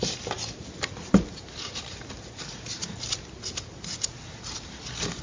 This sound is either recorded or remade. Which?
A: recorded